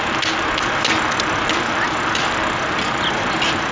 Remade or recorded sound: recorded